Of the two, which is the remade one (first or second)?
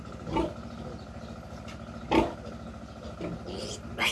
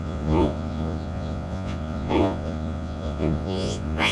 second